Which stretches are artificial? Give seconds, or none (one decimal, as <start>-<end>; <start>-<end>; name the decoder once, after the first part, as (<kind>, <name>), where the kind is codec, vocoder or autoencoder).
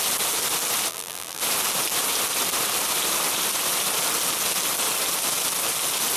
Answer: 0.9-1.4 (vocoder, BigVGAN v2)